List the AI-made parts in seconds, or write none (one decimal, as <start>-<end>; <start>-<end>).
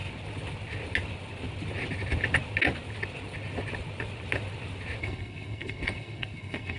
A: 5.0-6.8